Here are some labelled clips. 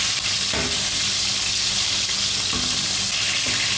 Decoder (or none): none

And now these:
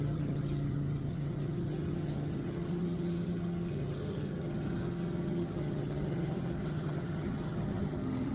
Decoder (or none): vocoder, HiFi-GAN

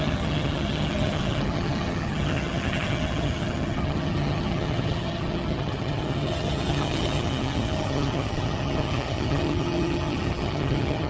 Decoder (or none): vocoder, HiFi-GAN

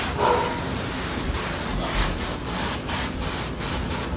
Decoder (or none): none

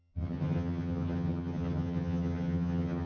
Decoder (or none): vocoder, HiFi-GAN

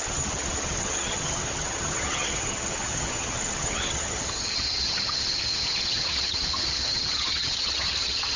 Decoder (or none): vocoder, HiFi-GAN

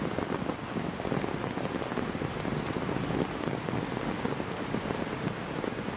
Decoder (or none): none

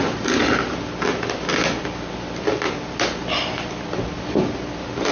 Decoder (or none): none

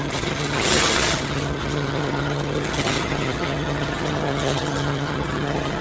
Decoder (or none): vocoder, HiFi-GAN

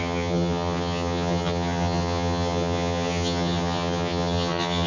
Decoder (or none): vocoder, HiFi-GAN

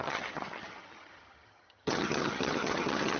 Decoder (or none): vocoder, HiFi-GAN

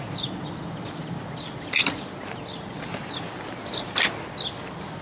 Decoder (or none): none